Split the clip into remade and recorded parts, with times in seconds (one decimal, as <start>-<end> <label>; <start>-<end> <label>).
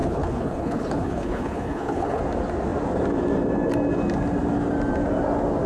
0.0-2.2 remade; 2.2-5.7 recorded